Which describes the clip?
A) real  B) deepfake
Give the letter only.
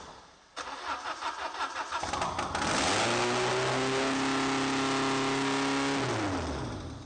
A